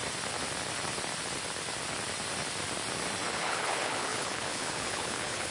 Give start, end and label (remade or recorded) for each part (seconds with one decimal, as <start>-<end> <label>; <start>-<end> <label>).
0.0-3.3 recorded; 3.3-5.5 remade